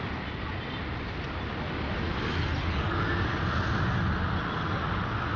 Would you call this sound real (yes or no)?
yes